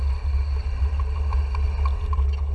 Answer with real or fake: real